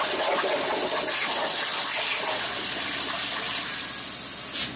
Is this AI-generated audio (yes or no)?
no